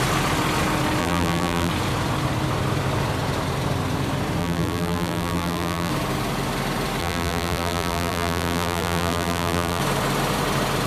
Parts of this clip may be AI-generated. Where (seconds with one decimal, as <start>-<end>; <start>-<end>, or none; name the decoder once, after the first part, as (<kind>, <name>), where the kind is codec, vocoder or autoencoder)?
1.0-1.7 (vocoder, BigVGAN v2); 4.4-5.9; 7.0-9.8